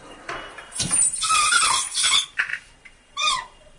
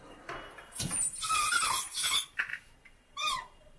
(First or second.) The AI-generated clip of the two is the first